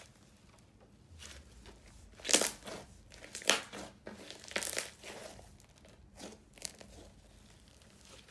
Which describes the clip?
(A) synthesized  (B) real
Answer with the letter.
B